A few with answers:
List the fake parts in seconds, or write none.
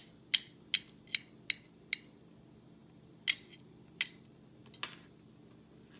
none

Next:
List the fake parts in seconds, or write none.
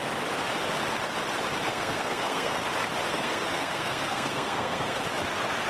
1.7-2.6 (codec, SNAC); 3.1-5.0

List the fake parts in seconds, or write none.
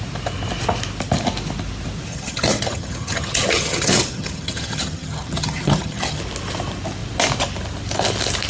2.1-6.2 (vocoder, HiFi-GAN)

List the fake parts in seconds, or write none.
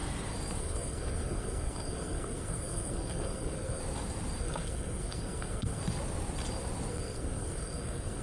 0.6-3.8 (codec, SNAC); 4.4-5.8; 6.9-8.2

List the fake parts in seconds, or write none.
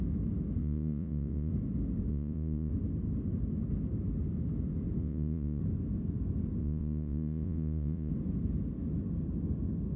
0.6-1.5 (vocoder, Vocos); 2.1-2.7; 5.0-5.6; 6.6-8.1